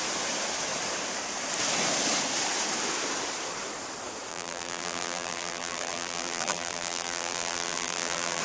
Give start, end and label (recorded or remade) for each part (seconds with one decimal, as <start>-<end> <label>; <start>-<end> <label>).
0.0-4.3 recorded; 4.3-8.4 remade